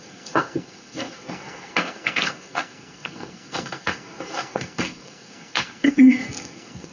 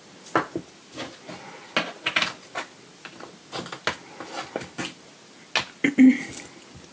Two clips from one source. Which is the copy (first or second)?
first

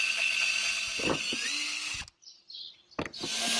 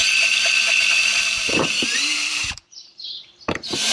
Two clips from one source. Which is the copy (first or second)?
second